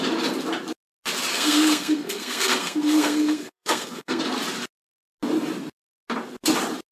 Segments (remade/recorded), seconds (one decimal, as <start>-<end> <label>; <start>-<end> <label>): 0.0-1.3 recorded; 1.3-4.2 remade; 4.2-6.9 recorded